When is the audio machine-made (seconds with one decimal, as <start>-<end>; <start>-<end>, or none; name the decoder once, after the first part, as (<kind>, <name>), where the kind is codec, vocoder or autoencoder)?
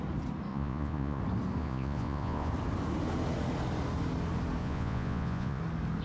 0.5-1.2 (vocoder, Vocos); 1.6-2.5; 4.6-5.6